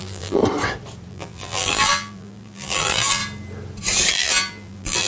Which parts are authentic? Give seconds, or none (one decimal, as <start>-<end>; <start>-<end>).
0.4-1.1; 3.2-4.1